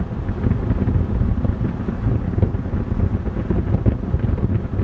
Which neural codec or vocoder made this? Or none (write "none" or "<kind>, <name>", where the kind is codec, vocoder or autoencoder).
none